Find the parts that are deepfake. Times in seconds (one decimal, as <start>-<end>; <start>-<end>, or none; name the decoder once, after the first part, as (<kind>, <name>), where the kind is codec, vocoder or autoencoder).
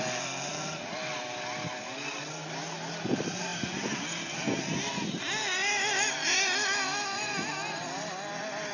none